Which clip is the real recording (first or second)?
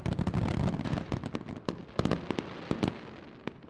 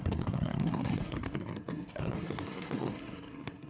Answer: first